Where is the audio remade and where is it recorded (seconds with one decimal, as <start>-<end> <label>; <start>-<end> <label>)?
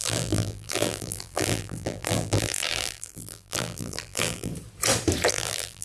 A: 0.0-4.5 remade; 4.5-5.3 recorded; 5.3-5.8 remade